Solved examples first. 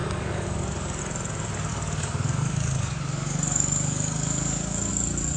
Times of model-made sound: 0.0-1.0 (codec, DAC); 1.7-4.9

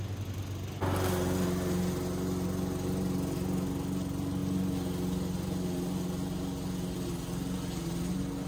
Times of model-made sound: none

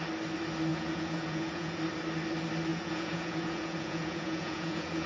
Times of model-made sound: 0.7-1.8 (vocoder, Vocos); 2.7-5.1